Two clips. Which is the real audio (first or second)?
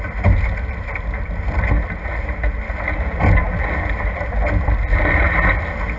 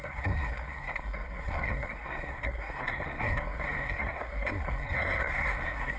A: first